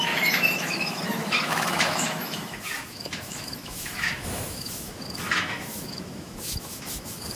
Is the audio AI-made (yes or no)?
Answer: yes